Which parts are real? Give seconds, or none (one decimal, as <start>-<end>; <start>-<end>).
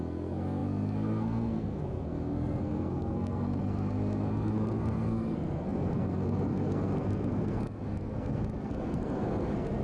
none